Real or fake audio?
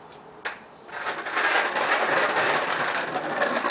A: real